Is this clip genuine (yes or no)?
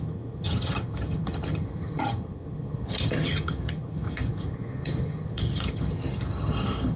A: no